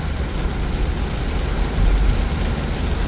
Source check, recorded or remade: recorded